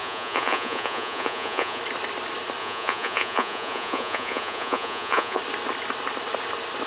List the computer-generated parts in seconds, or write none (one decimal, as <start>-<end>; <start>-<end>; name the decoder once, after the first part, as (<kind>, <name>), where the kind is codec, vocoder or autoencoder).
0.0-1.8 (vocoder, Vocos); 2.6-5.4

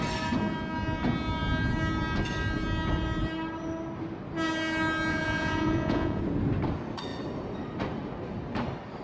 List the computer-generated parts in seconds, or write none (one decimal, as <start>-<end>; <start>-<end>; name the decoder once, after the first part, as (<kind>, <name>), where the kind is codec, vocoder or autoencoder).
5.1-6.2 (vocoder, Vocos)